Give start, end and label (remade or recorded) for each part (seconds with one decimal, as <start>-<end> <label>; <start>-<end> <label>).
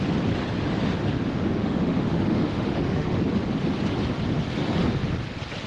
0.0-1.6 recorded; 1.6-3.2 remade; 3.2-5.7 recorded